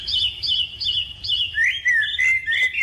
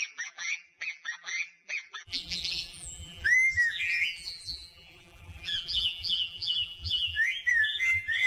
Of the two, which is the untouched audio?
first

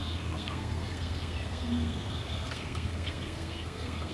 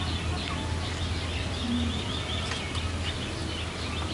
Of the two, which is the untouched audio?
second